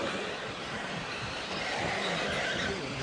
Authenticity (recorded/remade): remade